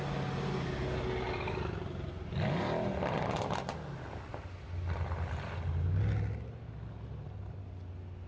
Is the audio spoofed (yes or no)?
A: no